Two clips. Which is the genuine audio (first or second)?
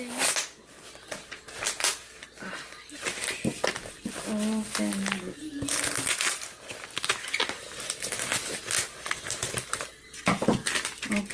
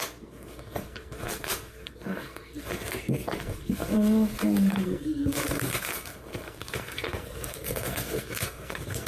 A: first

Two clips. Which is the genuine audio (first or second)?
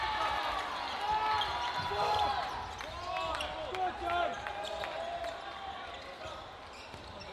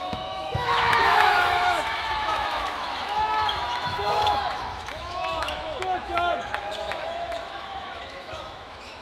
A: first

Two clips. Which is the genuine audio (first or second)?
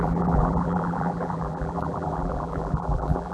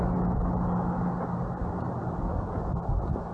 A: second